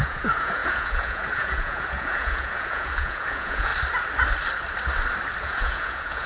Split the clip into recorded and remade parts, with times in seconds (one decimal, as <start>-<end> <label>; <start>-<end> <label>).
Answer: 0.0-3.7 remade; 3.7-5.4 recorded; 5.4-6.3 remade